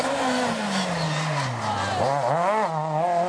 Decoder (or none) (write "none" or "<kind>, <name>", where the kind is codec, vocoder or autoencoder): none